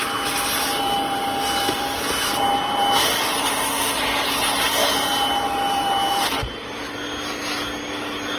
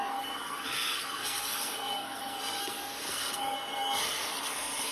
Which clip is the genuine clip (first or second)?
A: first